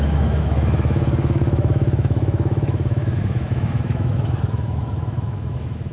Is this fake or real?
fake